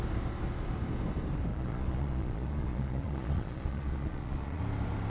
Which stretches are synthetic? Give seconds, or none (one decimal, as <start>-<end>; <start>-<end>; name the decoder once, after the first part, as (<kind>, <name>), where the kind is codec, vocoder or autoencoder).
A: 1.5-4.6 (vocoder, Vocos)